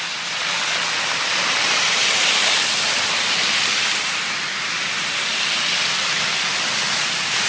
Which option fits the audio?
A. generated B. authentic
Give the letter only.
B